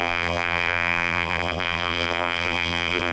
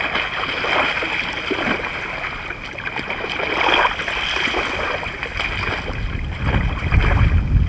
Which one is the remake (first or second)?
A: first